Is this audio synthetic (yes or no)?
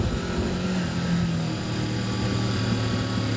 no